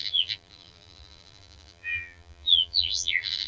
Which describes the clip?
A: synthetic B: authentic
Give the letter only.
A